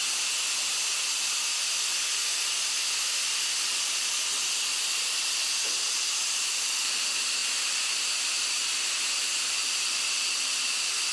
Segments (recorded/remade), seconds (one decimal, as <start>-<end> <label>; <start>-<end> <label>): 0.0-0.8 remade; 0.8-3.4 recorded; 3.4-11.1 remade